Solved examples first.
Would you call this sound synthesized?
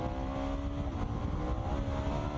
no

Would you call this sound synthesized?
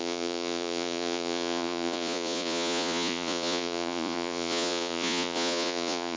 yes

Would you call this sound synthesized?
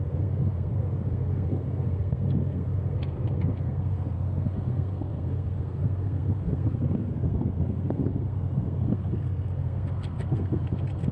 yes